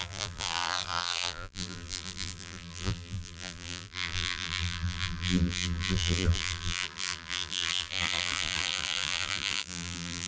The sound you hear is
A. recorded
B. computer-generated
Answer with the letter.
B